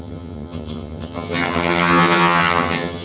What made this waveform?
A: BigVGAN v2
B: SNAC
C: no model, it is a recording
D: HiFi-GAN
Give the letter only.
D